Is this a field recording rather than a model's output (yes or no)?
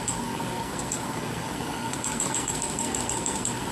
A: no